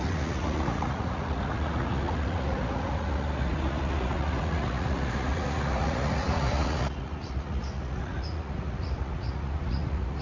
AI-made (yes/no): yes